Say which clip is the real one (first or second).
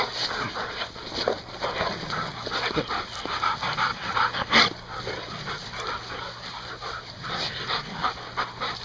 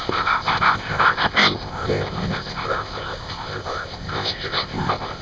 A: first